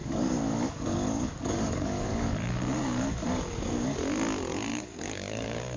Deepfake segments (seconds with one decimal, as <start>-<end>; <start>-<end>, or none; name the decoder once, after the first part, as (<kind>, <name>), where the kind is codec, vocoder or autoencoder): 0.0-3.5 (codec, DAC); 4.7-5.8